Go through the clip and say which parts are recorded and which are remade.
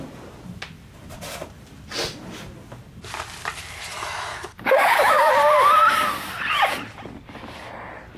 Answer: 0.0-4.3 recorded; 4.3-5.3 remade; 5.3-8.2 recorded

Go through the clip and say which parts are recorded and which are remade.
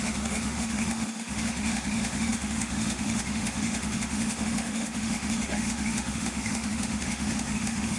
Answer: 0.0-8.0 remade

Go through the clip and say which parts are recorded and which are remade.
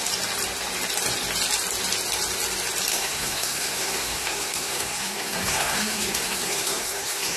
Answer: 0.0-2.9 recorded; 2.9-7.4 remade